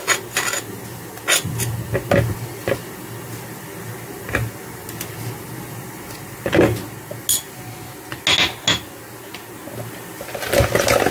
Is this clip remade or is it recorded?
recorded